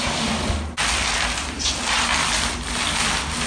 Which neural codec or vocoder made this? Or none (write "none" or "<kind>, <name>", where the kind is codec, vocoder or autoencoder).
none